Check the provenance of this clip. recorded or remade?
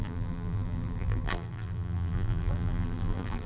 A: remade